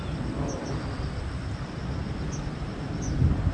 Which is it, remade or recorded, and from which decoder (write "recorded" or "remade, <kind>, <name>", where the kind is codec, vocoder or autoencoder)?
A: recorded